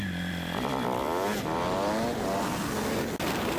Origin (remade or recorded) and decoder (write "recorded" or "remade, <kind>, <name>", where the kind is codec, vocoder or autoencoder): recorded